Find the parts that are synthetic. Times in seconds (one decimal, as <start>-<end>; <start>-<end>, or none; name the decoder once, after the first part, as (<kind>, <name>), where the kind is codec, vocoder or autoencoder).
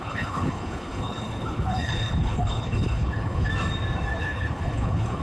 0.0-3.5 (codec, HILCodec); 4.2-5.2